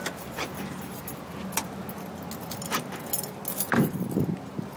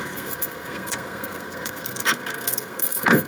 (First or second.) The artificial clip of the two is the second